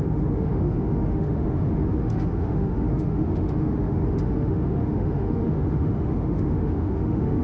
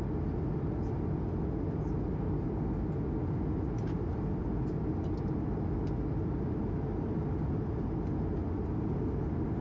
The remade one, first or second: first